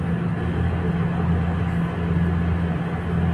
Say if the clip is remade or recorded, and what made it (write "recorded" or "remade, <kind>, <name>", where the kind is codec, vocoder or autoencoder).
recorded